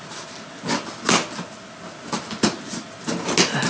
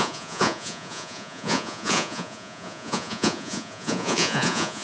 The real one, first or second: first